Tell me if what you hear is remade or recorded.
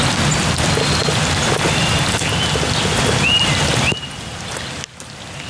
recorded